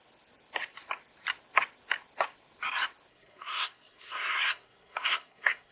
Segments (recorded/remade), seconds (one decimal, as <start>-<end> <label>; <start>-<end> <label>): 0.0-3.1 recorded; 3.1-5.7 remade